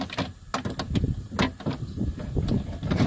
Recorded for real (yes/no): yes